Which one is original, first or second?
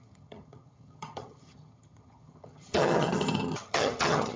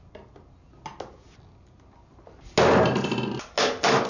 second